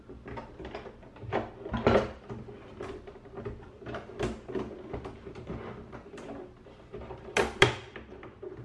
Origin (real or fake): real